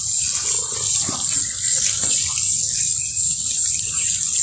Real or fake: real